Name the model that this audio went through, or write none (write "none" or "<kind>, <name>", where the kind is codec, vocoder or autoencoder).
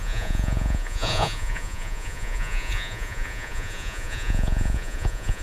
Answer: vocoder, Vocos